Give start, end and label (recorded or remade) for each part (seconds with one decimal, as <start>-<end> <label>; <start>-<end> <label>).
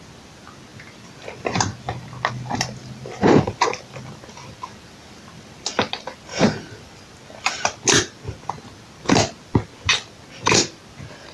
0.0-2.8 recorded; 2.8-7.0 remade; 7.0-11.3 recorded